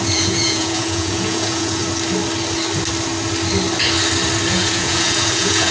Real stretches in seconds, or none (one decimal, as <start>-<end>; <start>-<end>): 1.8-4.5